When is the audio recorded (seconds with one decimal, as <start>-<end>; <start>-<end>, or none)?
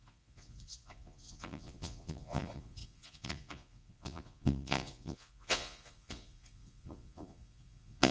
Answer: none